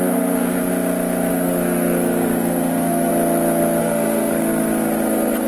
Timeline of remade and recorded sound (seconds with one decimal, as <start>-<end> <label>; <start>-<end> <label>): 0.0-0.7 remade; 0.7-1.3 recorded; 1.3-3.1 remade; 3.1-3.8 recorded; 3.8-5.5 remade